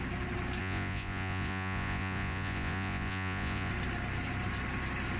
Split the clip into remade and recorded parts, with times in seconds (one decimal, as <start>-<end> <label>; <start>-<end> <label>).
0.0-0.6 recorded; 0.6-3.7 remade; 3.7-5.2 recorded